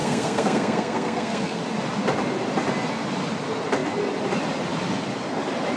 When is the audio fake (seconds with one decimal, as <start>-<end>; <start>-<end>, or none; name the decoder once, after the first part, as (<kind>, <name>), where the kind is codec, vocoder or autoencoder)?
0.0-1.6 (codec, SNAC)